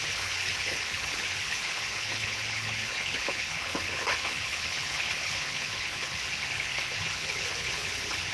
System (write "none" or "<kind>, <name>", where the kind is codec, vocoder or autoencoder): codec, HILCodec